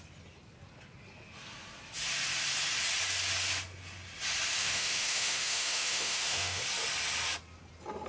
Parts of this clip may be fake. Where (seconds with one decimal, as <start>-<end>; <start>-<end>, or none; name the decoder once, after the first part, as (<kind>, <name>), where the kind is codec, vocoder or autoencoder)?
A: 4.6-6.6 (autoencoder, DAC-VAE)